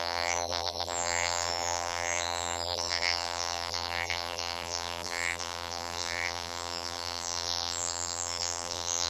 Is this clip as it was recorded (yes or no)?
no